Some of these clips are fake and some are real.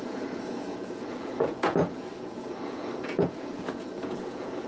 fake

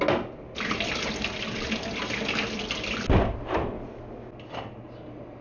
real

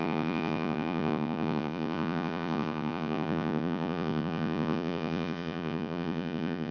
fake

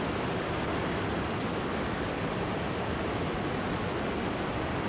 real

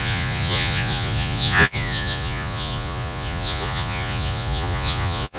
fake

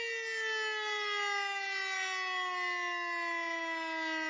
real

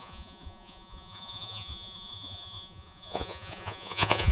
fake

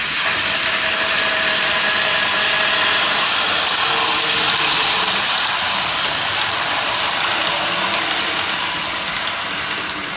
real